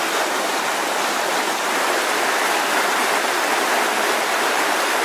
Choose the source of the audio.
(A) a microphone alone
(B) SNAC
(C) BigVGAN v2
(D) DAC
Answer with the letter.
A